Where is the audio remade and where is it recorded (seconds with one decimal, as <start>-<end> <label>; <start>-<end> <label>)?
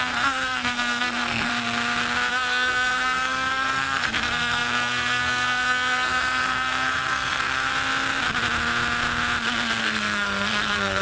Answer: 0.0-1.5 remade; 1.5-2.3 recorded; 2.3-7.7 remade; 7.7-9.8 recorded; 9.8-11.0 remade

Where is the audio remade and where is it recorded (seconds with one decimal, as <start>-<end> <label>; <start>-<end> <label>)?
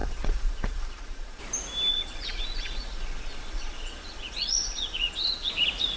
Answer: 0.0-1.4 remade; 1.4-1.9 recorded; 1.9-5.5 remade; 5.5-6.0 recorded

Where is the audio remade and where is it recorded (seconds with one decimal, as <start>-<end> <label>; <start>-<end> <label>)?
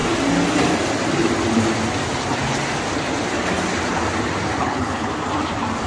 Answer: 0.0-4.6 recorded; 4.6-5.1 remade; 5.1-5.9 recorded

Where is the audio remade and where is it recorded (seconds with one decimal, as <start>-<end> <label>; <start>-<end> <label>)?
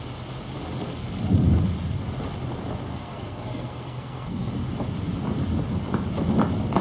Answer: 0.0-2.9 recorded; 2.9-4.5 remade; 4.5-6.8 recorded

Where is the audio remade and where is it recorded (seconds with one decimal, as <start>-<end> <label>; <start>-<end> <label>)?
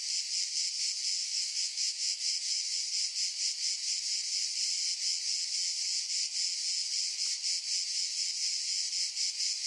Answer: 0.0-1.2 recorded; 1.2-2.8 remade; 2.8-9.7 recorded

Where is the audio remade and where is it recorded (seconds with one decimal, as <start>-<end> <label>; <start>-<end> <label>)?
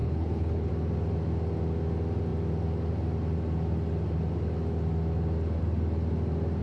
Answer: 0.0-0.7 remade; 0.7-6.6 recorded